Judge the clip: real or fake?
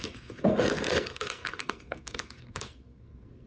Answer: fake